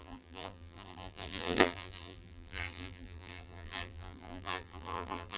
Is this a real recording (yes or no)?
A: no